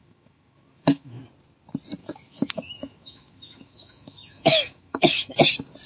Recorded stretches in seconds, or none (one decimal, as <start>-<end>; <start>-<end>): 1.2-2.0; 5.5-5.9